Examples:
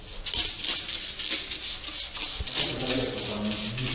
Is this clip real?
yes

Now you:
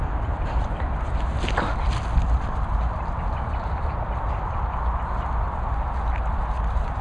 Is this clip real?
yes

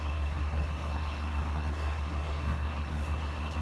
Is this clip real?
no